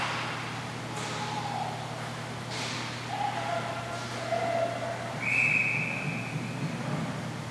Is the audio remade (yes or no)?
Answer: no